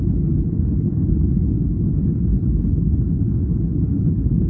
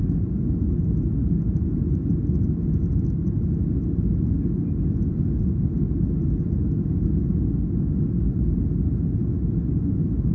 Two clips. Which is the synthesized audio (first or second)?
first